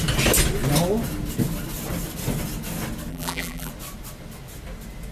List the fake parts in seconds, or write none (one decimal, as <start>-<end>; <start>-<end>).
3.1-3.7